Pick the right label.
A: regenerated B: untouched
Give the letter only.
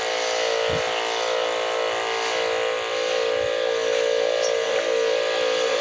B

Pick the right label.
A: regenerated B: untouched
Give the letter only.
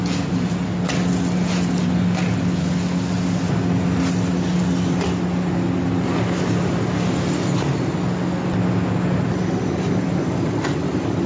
B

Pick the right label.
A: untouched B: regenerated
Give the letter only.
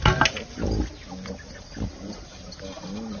A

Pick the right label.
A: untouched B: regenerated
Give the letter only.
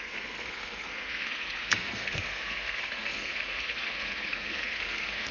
B